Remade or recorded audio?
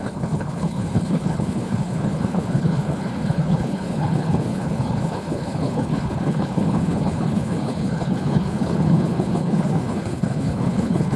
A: remade